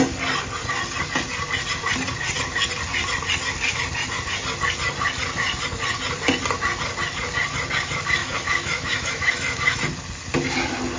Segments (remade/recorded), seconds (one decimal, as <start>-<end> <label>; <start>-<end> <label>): 0.0-8.2 recorded; 8.2-9.8 remade; 9.8-11.0 recorded